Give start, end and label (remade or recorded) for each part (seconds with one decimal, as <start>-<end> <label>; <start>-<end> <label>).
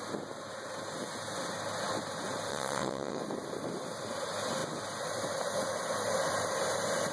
0.0-2.5 recorded; 2.5-3.2 remade; 3.2-7.1 recorded